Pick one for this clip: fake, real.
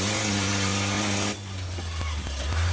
real